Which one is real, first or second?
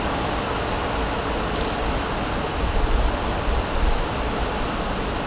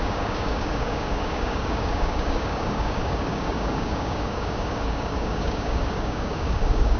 first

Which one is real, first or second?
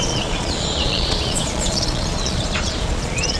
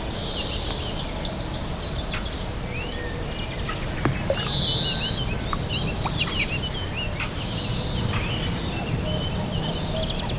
second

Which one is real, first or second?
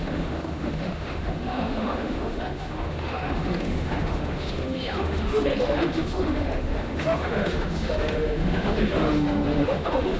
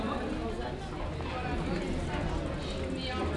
second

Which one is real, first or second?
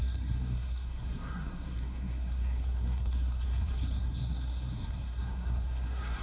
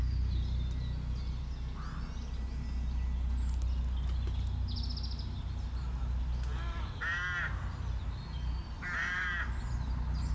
second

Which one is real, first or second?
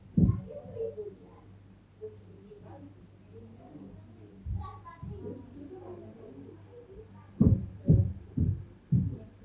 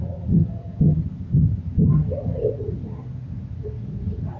first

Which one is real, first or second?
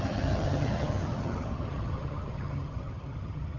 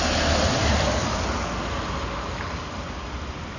second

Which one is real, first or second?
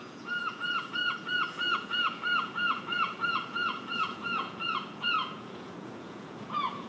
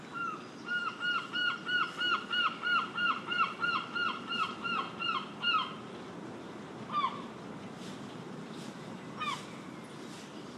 second